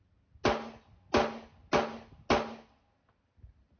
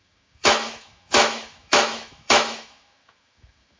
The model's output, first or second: second